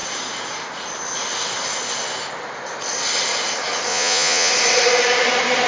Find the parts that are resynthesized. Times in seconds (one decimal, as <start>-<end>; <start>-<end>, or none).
3.9-4.5